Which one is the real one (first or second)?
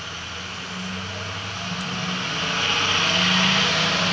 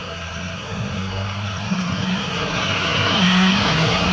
first